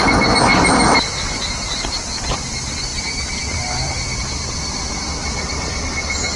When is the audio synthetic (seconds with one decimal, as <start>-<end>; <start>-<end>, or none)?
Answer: 0.5-1.1; 2.9-4.2; 5.2-5.8